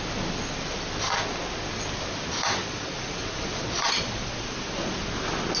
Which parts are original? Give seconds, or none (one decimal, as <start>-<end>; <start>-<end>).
0.0-2.6; 5.1-5.6